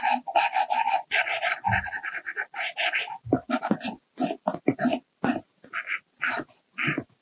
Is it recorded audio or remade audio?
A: recorded